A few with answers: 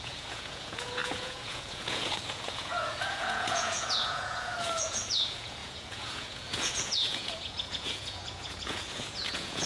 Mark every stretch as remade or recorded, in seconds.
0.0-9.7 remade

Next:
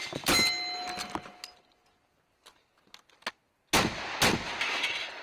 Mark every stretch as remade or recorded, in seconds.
0.0-5.2 recorded

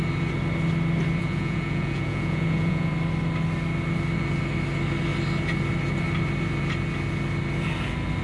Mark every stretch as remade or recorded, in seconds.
0.0-1.2 recorded; 1.2-2.9 remade; 2.9-8.2 recorded

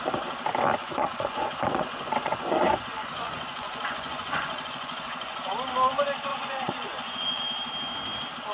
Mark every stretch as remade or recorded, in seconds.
0.0-0.8 recorded; 0.8-5.5 remade; 5.5-6.3 recorded; 6.3-7.4 remade; 7.4-8.5 recorded

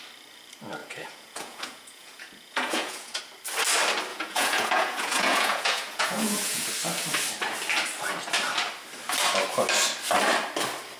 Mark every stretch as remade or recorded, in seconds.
0.0-0.8 recorded; 0.8-3.2 remade; 3.2-4.1 recorded; 4.1-6.7 remade; 6.7-11.0 recorded